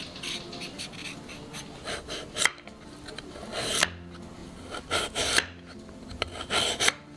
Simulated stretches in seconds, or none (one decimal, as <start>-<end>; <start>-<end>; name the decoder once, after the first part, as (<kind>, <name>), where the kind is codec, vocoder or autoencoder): none